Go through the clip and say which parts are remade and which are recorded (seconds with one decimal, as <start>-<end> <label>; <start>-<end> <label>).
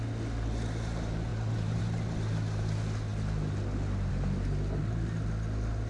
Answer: 0.0-1.3 recorded; 1.3-1.8 remade; 1.8-5.9 recorded